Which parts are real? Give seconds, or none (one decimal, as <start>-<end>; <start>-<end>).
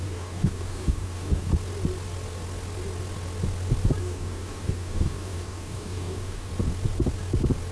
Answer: 1.5-4.0; 6.5-7.7